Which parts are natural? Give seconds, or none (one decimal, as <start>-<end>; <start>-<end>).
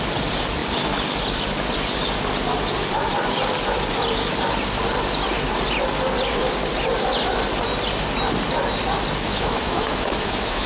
0.0-9.3